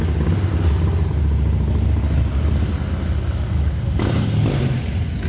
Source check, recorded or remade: recorded